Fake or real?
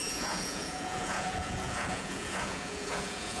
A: fake